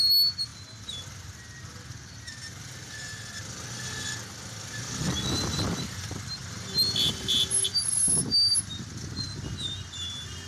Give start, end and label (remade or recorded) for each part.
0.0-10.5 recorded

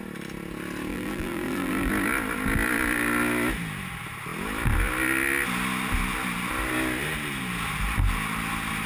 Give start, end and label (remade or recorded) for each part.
0.0-0.9 recorded; 0.9-1.9 remade; 1.9-8.9 recorded